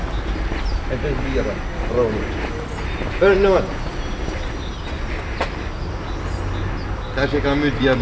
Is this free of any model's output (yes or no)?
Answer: yes